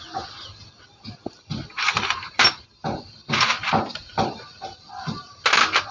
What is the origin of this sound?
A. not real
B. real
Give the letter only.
B